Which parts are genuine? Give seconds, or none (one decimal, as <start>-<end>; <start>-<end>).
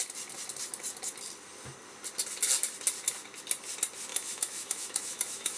0.0-4.1